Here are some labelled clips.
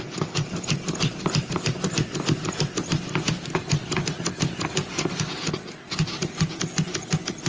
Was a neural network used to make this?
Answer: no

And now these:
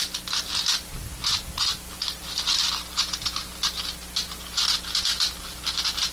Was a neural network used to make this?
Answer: yes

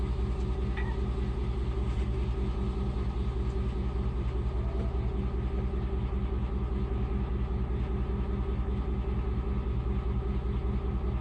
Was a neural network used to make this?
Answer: no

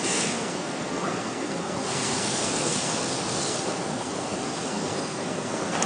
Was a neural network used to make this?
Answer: yes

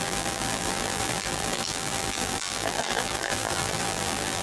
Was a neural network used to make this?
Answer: yes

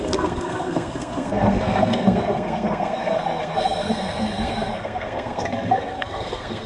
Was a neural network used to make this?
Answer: yes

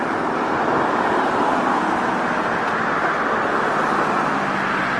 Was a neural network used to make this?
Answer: no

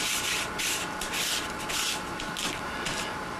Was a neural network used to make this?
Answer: no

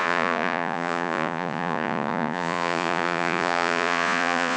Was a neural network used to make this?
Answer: yes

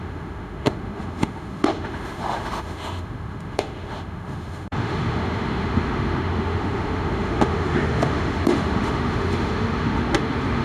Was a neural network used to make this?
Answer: yes